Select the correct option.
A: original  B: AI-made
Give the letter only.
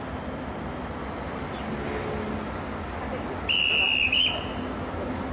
A